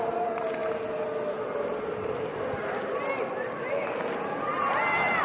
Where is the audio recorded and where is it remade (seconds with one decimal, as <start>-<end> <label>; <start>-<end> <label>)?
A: 0.0-5.2 recorded